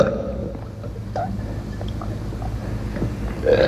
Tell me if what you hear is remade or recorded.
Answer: recorded